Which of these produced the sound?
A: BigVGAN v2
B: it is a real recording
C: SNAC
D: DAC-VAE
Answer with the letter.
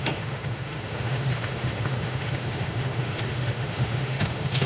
D